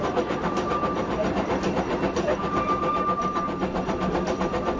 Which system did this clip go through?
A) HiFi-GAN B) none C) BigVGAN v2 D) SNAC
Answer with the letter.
B